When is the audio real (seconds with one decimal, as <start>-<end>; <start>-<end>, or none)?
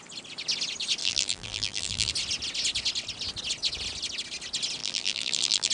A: 0.0-1.0; 2.1-4.8